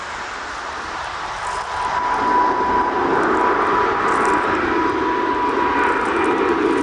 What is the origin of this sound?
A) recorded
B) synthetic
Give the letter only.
A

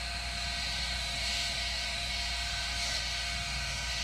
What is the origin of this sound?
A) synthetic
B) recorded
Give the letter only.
A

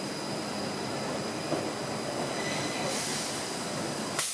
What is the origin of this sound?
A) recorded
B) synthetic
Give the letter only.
A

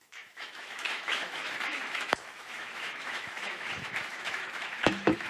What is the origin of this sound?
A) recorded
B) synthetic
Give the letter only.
B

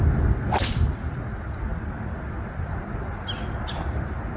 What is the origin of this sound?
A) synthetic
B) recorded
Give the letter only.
B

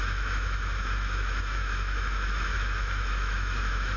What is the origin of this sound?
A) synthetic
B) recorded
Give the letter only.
A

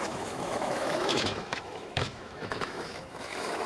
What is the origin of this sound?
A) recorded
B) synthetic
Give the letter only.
B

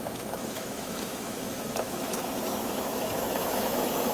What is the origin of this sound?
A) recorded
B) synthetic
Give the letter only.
B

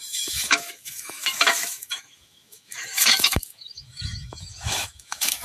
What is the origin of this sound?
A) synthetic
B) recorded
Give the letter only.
A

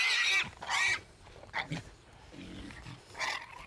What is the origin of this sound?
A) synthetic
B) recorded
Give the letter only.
B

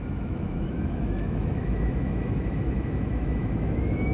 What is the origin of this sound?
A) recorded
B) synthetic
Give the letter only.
B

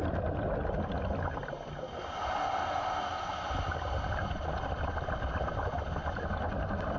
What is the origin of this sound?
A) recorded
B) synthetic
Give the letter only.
A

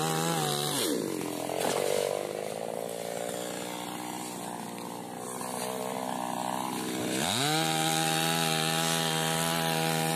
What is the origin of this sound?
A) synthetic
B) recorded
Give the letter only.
B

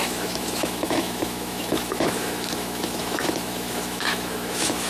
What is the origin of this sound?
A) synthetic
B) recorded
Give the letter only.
A